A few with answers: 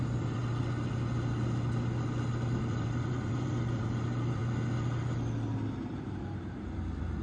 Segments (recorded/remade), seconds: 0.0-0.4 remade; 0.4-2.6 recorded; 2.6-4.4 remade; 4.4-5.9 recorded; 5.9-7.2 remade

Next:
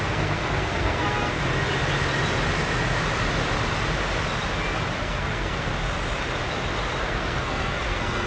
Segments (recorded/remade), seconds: 0.0-1.4 remade; 1.4-5.0 recorded; 5.0-5.7 remade; 5.7-7.0 recorded; 7.0-8.3 remade

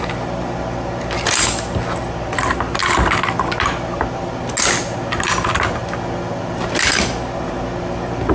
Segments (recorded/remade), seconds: 0.0-8.3 recorded

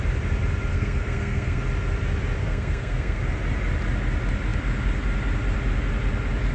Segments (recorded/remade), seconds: 0.0-0.7 recorded; 0.7-1.6 remade; 1.6-2.4 recorded; 2.4-3.2 remade; 3.2-6.5 recorded

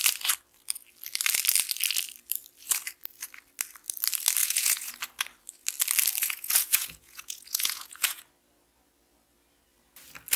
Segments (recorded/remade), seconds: 0.0-4.4 recorded; 4.4-4.9 remade; 4.9-6.2 recorded; 6.2-8.2 remade; 8.2-10.4 recorded

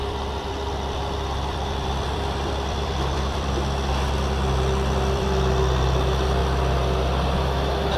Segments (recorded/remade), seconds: 0.0-6.4 remade; 6.4-7.4 recorded; 7.4-8.0 remade